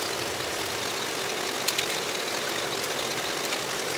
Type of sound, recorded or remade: recorded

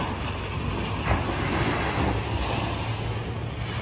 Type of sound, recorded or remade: recorded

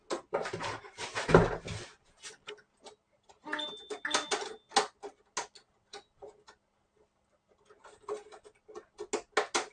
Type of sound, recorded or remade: recorded